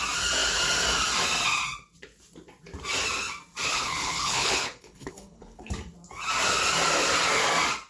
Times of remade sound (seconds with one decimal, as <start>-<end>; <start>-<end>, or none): 3.7-5.7

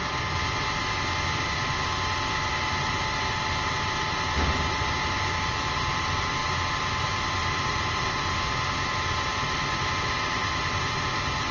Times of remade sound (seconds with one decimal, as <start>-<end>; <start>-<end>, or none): none

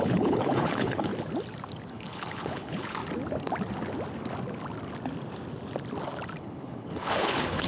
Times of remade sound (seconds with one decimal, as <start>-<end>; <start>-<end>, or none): 0.0-1.1; 1.9-3.0; 6.4-7.7